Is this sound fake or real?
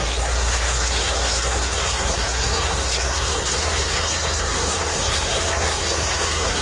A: fake